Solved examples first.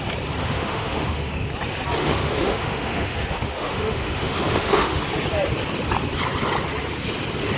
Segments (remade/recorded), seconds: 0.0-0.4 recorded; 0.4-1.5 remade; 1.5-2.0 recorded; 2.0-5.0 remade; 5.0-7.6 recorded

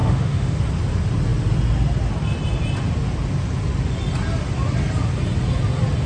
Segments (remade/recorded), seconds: 0.0-0.6 remade; 0.6-6.1 recorded

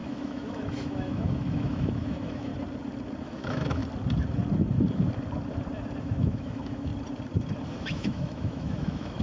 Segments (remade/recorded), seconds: 0.0-2.5 remade; 2.5-3.2 recorded; 3.2-3.8 remade; 3.8-6.0 recorded; 6.0-6.9 remade; 6.9-7.8 recorded; 7.8-9.2 remade

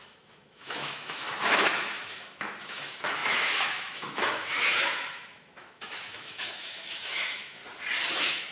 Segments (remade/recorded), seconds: 0.0-7.6 remade; 7.6-8.1 recorded; 8.1-8.5 remade